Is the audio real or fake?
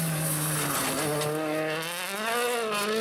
real